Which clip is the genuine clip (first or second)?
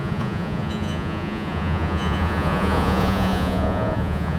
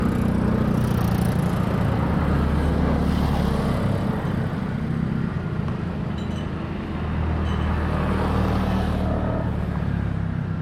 second